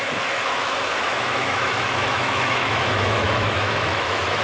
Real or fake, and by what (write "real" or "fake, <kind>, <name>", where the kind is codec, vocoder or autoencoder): fake, autoencoder, DAC-VAE